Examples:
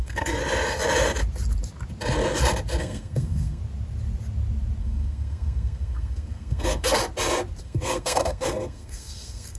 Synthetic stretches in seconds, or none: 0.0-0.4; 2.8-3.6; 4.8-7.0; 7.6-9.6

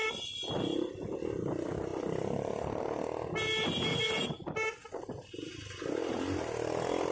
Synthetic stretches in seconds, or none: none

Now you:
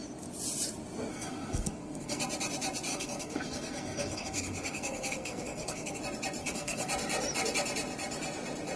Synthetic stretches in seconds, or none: 1.1-2.2; 2.9-6.0; 6.4-6.9

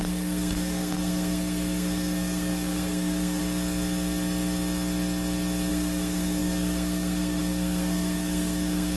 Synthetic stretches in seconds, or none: 0.0-3.4; 5.7-9.0